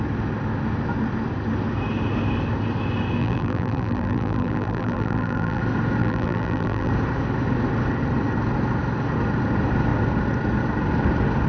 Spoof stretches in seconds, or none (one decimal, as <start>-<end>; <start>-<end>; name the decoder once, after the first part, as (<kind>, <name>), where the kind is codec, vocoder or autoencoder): 3.2-5.6 (vocoder, BigVGAN v2); 6.0-6.9